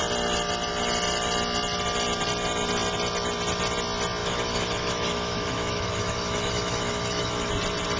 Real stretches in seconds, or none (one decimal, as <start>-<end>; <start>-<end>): 0.0-4.2; 7.5-8.0